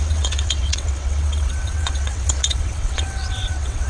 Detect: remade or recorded remade